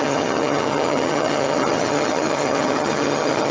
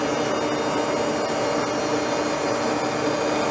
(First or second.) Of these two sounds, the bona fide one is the second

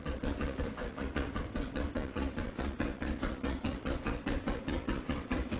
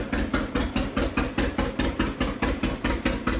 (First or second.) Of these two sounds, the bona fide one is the second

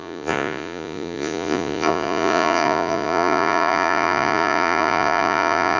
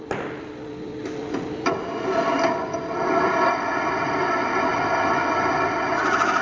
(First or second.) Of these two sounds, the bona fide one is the second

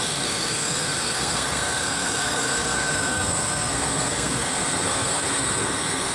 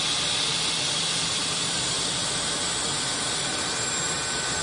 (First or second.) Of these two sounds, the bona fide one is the second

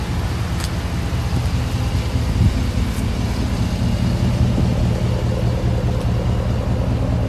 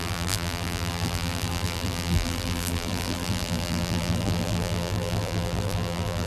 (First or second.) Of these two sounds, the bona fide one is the first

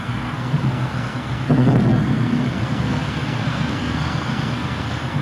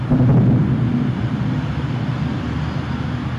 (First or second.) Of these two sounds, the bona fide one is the second